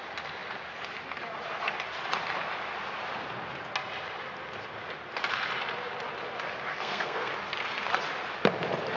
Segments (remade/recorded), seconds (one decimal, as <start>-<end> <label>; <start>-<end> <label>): 0.0-6.7 recorded; 6.7-7.3 remade; 7.3-9.0 recorded